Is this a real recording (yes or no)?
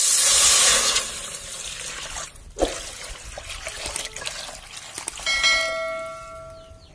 yes